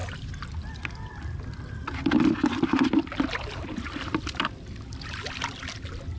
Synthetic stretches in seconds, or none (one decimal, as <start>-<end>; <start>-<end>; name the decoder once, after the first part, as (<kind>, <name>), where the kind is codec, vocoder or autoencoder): none